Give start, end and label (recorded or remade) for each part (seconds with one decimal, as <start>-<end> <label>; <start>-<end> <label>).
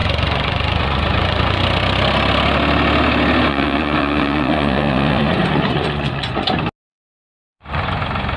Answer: 0.0-1.6 remade; 1.6-3.5 recorded; 3.5-6.5 remade; 6.5-6.9 recorded; 6.9-7.8 remade; 7.8-8.4 recorded